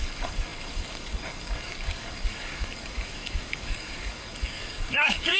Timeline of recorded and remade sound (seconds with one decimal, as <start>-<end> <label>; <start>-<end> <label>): 0.0-5.4 remade